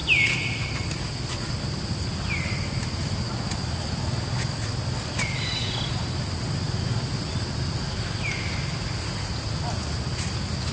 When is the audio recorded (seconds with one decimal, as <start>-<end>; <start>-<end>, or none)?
0.0-10.7